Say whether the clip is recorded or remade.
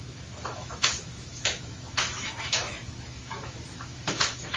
remade